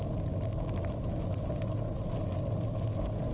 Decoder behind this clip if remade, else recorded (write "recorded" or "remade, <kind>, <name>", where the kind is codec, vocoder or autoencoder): recorded